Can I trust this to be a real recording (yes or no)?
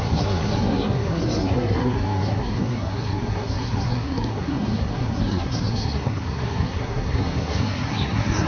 no